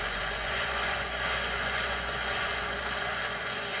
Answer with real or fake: fake